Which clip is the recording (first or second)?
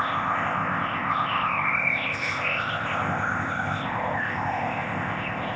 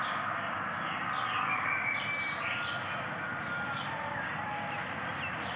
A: second